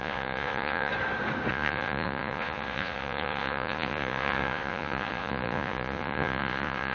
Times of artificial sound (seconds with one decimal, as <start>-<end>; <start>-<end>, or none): 0.0-0.9; 1.5-6.9

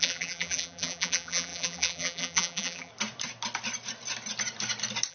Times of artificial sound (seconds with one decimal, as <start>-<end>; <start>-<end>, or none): 0.0-2.9

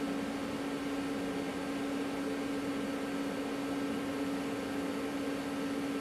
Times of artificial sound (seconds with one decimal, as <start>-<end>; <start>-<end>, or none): none